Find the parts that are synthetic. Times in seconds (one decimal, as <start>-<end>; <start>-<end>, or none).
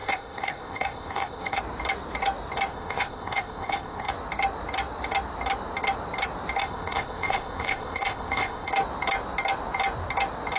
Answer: 0.0-1.6; 2.7-4.1; 6.6-8.7